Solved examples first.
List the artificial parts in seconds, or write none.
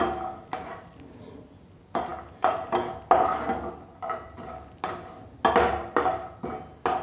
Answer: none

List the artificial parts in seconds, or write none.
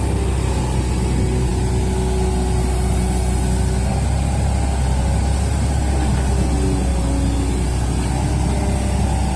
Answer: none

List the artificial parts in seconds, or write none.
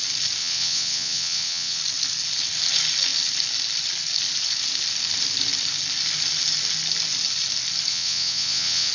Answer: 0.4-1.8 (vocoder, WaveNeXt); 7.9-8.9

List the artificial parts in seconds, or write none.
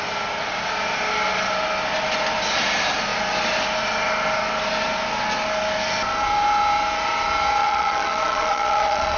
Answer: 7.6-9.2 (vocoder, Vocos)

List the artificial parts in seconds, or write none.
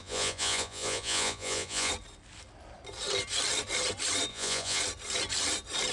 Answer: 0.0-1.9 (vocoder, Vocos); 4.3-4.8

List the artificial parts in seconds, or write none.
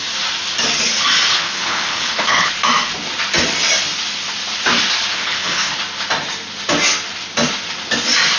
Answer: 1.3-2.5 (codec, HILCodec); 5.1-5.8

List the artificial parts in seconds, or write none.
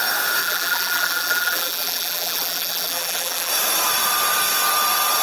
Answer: 0.4-3.5 (vocoder, BigVGAN v2)